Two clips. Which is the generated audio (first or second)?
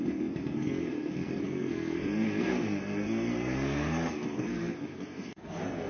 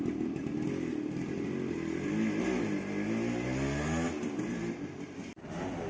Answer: first